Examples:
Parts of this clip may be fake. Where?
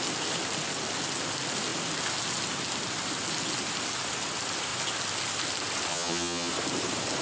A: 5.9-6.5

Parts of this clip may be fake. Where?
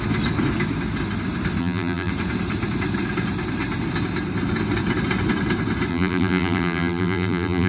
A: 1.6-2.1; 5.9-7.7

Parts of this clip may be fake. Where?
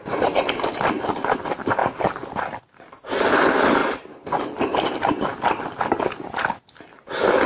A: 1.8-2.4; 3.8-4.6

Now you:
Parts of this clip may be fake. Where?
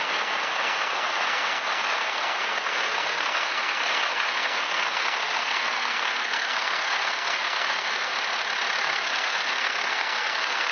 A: 0.0-8.1; 8.8-10.7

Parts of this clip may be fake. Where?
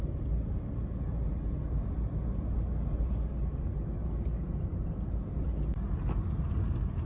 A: none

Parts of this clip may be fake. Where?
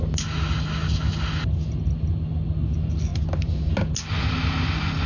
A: none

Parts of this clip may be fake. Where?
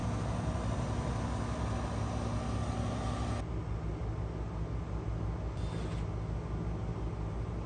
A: none